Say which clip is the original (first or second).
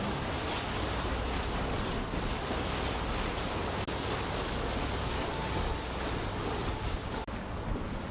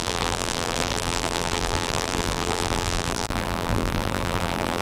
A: first